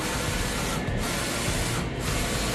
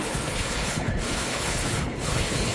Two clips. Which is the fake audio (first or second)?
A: second